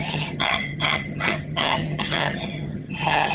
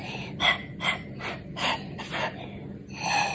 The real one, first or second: second